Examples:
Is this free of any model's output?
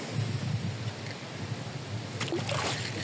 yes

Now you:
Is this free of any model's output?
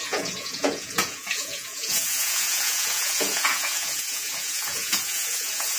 no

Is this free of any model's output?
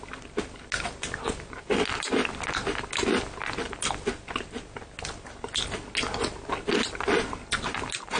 yes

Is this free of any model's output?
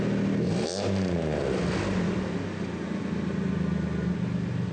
yes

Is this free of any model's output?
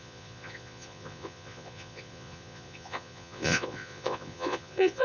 no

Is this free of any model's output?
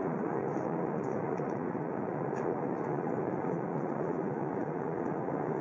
no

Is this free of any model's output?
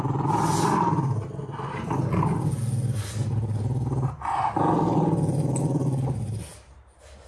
yes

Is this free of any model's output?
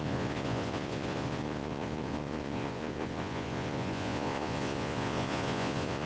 no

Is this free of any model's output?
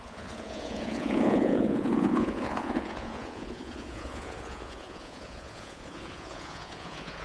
no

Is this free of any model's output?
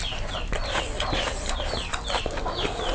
yes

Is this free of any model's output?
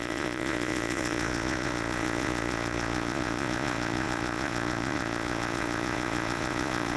no